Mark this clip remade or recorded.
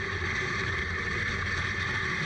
remade